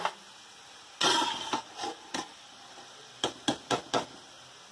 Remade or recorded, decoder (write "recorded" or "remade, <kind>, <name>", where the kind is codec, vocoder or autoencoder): recorded